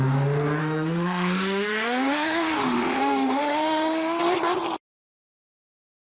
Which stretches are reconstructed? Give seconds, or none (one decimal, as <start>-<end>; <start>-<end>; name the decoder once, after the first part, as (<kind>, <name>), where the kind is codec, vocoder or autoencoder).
0.6-4.2 (autoencoder, DAC-VAE)